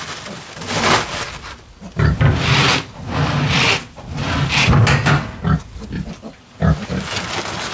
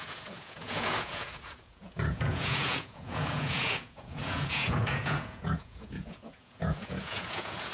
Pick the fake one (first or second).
second